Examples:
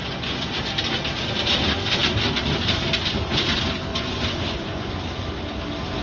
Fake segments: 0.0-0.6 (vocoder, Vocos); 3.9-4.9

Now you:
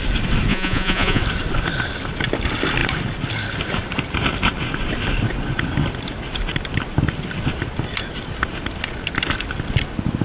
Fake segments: 0.5-1.2 (vocoder, Vocos)

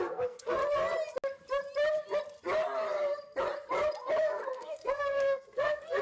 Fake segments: 0.0-0.6 (codec, SNAC); 4.2-6.0

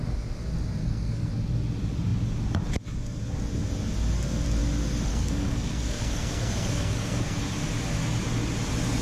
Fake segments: 0.8-1.3 (codec, SNAC); 5.1-7.4

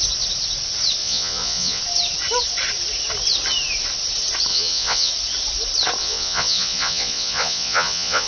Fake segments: 1.0-1.8 (vocoder, Vocos); 4.5-5.1; 6.0-8.3